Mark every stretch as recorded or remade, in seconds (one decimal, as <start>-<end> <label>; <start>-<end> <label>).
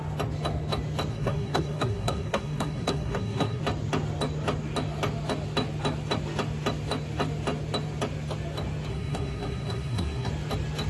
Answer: 0.0-1.1 recorded; 1.1-3.6 remade; 3.6-8.9 recorded; 8.9-10.3 remade; 10.3-10.9 recorded